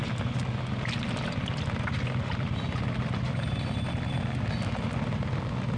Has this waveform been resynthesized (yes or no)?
no